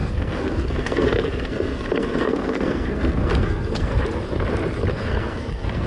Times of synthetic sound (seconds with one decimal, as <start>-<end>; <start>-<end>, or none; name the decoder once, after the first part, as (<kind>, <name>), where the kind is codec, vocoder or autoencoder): 0.0-3.9 (codec, SNAC); 4.9-5.9